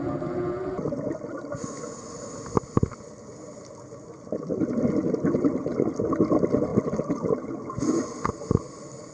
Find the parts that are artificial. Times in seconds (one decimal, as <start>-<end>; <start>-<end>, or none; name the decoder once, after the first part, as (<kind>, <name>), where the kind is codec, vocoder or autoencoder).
none